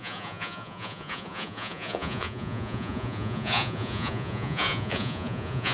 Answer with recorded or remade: remade